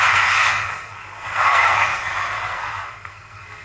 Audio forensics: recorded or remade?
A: remade